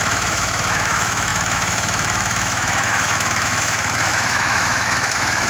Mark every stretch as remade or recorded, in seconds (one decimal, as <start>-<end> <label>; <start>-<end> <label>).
0.0-5.5 remade